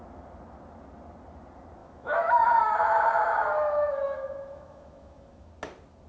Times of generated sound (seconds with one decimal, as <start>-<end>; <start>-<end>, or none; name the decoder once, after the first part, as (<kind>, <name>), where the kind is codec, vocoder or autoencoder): 1.8-5.5 (autoencoder, DAC-VAE)